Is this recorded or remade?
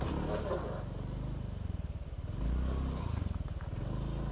recorded